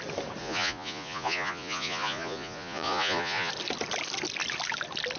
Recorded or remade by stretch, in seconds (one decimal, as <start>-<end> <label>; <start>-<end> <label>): 0.0-0.4 recorded; 0.4-3.5 remade; 3.5-5.2 recorded